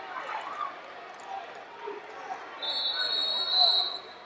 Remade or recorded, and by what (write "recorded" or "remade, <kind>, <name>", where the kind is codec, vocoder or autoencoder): recorded